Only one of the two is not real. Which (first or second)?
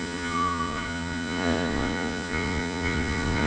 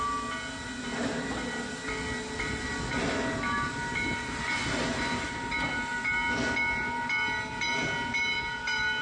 first